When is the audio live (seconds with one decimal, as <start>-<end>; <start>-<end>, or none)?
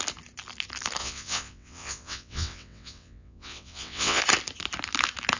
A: 0.0-1.0; 4.2-5.4